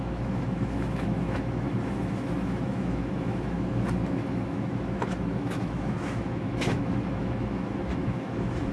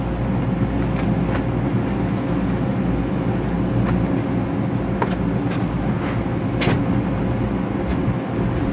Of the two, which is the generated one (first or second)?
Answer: first